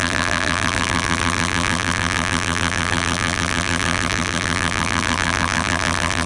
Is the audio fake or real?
fake